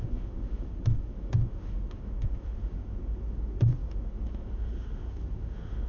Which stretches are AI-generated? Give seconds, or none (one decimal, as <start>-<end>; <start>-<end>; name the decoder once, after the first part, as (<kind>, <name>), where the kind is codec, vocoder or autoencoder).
0.0-5.9 (autoencoder, DAC-VAE)